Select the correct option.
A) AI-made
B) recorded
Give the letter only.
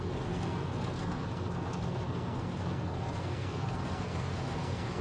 A